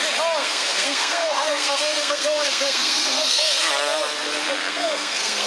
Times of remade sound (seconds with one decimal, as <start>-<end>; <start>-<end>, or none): 0.4-3.7; 4.6-5.5